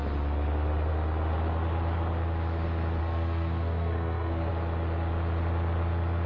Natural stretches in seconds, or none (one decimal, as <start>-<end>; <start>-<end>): 0.0-3.0; 4.5-6.3